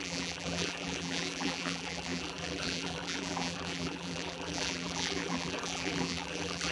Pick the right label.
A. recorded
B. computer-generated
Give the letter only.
B